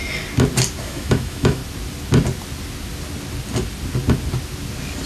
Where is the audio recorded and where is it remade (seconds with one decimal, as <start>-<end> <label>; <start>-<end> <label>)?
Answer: 0.0-0.8 recorded; 0.8-1.6 remade; 1.6-5.1 recorded